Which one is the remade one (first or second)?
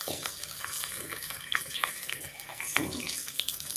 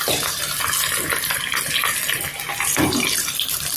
first